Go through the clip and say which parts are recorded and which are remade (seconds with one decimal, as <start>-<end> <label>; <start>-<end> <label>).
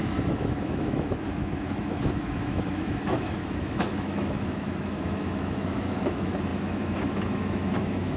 0.0-8.2 remade